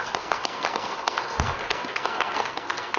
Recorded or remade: remade